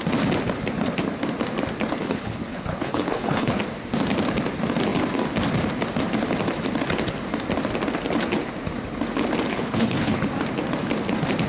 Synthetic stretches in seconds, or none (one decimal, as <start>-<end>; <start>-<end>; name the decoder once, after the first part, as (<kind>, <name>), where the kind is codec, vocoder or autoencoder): 2.0-3.6 (codec, HILCodec); 9.5-10.2